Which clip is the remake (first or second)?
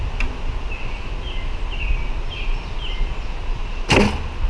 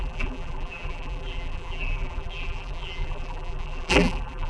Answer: second